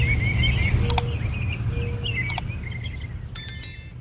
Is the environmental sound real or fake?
real